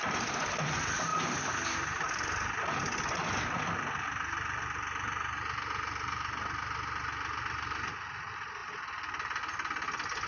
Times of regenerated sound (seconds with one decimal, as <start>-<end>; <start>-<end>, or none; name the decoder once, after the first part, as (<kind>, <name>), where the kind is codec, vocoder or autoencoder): none